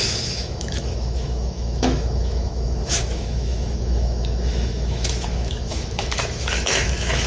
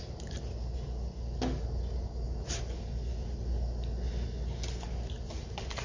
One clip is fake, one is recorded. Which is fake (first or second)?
first